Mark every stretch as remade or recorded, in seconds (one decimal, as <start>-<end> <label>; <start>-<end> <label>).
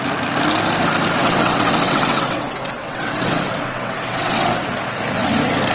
0.0-1.2 recorded; 1.2-4.6 remade; 4.6-5.7 recorded